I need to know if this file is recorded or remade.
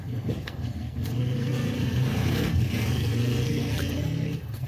remade